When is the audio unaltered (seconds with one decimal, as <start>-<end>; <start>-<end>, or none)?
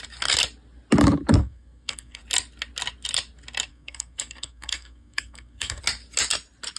0.0-1.4; 2.2-3.7; 5.8-6.8